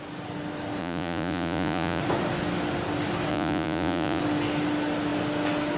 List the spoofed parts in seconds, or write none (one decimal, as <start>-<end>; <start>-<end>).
0.8-2.0; 3.3-4.2